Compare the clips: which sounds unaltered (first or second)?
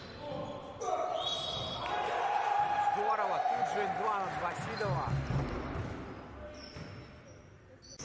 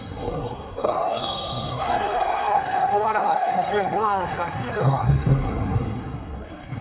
first